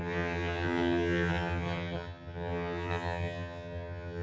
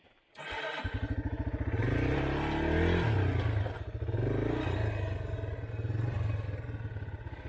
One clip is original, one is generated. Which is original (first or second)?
second